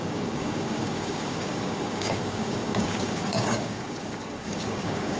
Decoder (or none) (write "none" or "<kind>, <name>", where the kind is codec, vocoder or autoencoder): codec, DAC